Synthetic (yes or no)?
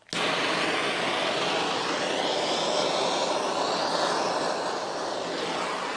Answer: no